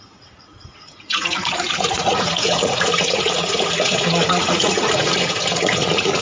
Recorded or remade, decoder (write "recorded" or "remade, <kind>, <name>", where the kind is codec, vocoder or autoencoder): remade, vocoder, Vocos